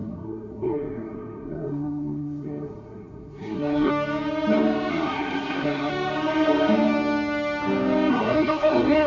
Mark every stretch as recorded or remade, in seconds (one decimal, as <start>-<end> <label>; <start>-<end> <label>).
0.0-3.9 remade; 3.9-4.9 recorded; 4.9-5.9 remade; 5.9-8.1 recorded; 8.1-9.1 remade